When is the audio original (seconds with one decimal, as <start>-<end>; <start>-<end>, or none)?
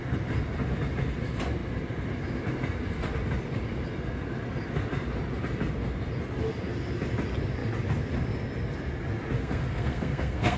0.0-9.4